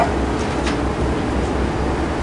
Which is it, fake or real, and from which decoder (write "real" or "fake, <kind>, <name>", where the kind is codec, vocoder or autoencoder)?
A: real